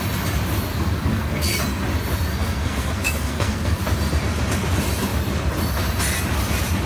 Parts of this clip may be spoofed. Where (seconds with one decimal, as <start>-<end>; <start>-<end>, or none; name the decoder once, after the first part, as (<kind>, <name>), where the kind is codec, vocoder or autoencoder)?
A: 0.7-1.6 (codec, SNAC); 2.3-3.8